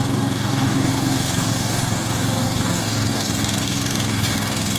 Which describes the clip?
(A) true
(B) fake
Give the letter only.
B